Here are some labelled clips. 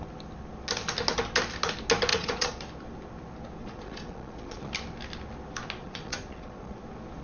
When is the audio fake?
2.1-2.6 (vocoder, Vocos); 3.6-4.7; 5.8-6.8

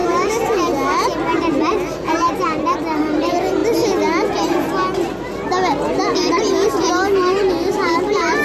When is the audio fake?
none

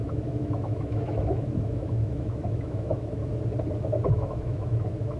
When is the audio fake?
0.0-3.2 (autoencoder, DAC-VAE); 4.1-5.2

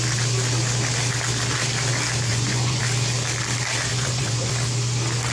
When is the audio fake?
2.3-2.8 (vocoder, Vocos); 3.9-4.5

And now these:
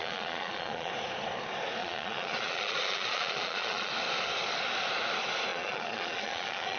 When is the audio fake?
0.0-0.9 (vocoder, Vocos); 1.8-3.9; 5.5-6.8

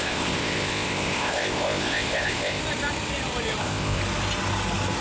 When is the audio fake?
0.0-2.6 (codec, ZipCodec); 3.6-4.0